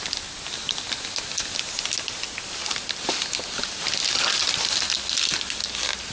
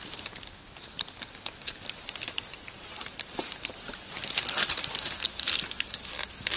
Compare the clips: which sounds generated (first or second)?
second